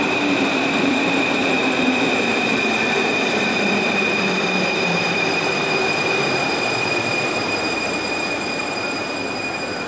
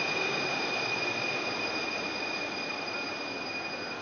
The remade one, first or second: first